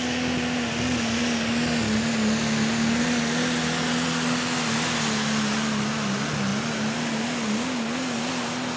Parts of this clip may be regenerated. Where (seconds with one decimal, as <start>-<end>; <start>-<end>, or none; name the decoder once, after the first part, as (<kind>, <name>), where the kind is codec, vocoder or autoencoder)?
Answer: none